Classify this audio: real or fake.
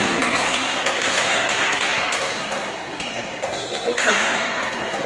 fake